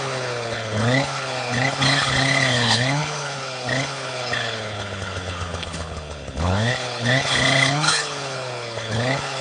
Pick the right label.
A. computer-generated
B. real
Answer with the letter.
A